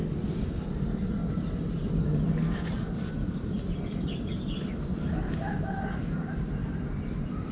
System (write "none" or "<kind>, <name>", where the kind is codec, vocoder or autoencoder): none